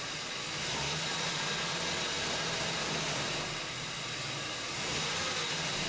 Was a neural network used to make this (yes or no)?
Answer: no